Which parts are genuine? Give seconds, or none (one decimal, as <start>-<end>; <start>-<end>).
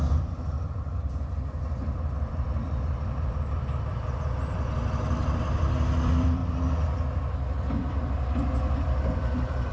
6.4-7.8